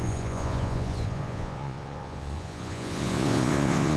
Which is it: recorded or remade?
remade